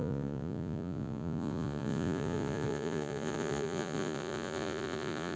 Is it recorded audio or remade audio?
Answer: remade